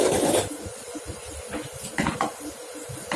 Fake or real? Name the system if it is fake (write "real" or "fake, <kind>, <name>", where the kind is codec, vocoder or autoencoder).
real